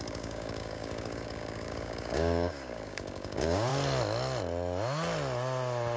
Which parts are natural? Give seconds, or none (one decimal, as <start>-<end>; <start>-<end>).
3.7-6.0